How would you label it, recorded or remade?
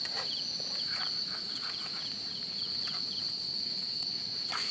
remade